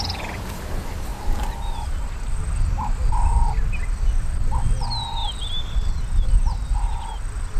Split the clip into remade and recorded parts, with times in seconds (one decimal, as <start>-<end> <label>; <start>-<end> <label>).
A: 0.0-7.6 recorded